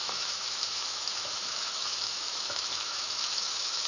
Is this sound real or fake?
fake